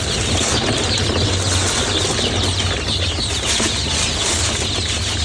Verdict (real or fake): real